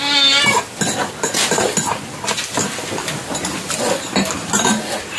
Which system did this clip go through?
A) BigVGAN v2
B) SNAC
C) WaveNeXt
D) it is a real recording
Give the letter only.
D